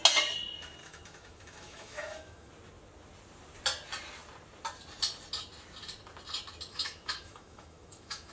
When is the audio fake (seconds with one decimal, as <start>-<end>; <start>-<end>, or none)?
0.8-2.5; 6.7-8.3

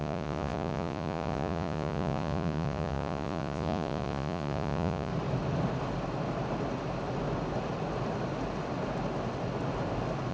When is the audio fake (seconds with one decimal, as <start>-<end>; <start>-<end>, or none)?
0.0-5.1

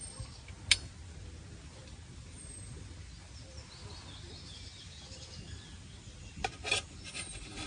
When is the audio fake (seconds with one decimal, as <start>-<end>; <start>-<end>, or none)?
none

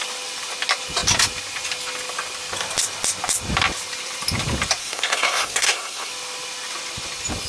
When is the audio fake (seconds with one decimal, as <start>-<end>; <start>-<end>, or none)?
4.8-6.1

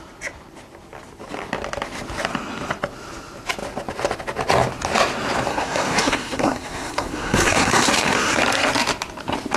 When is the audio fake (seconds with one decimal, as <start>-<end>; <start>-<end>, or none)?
5.5-8.4

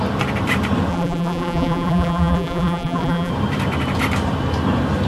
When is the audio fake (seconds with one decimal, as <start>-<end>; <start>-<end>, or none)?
0.9-3.3

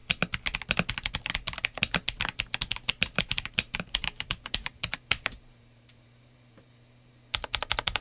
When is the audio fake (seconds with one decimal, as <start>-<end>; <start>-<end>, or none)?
3.3-8.0

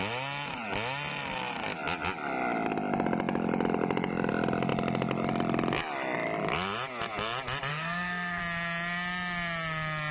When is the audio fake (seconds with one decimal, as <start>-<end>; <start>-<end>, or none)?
7.7-8.4